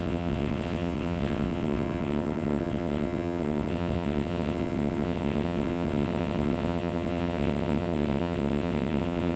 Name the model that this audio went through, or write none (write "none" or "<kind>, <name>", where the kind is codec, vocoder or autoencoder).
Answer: vocoder, WaveNeXt